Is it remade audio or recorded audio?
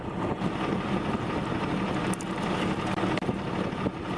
recorded